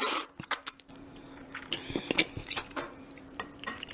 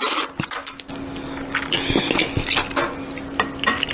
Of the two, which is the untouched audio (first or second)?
second